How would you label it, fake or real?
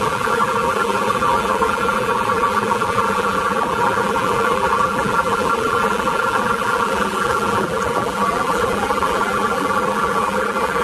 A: fake